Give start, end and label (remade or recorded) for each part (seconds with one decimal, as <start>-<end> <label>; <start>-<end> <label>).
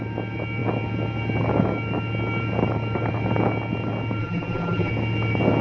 0.0-4.2 recorded; 4.2-4.9 remade; 4.9-5.6 recorded